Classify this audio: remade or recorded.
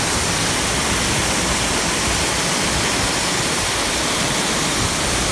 recorded